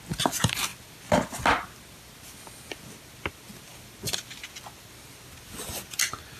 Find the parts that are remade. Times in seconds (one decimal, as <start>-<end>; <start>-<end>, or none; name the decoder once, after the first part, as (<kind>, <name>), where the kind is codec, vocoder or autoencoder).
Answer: none